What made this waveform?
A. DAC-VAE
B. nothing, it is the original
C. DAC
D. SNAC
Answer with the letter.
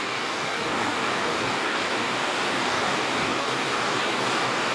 C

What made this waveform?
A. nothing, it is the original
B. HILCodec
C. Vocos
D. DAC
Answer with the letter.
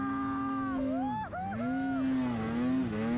A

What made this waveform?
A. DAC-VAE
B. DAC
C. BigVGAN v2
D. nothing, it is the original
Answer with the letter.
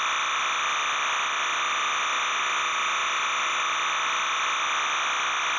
D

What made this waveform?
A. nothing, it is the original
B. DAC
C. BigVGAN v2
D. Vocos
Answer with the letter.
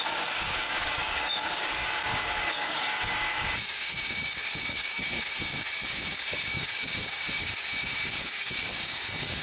B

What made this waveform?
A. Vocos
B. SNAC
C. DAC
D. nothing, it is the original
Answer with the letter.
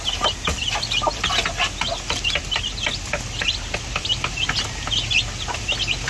D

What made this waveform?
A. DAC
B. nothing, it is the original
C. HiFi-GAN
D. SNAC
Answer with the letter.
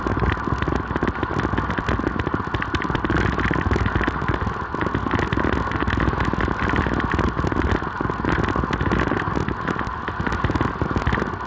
B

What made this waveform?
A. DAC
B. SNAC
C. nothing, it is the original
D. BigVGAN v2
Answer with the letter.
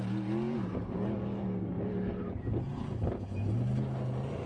C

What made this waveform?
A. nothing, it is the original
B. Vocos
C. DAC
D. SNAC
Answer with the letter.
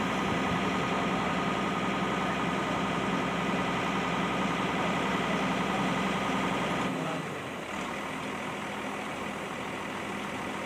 A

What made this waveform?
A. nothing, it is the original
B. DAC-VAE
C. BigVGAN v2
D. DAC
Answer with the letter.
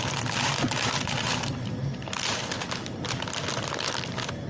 A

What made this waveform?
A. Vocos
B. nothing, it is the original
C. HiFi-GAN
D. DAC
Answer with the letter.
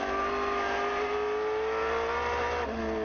B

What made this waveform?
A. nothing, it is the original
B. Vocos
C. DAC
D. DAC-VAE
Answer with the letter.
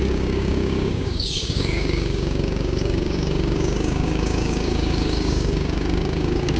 C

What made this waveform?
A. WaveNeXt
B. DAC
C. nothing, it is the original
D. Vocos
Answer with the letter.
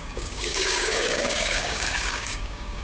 B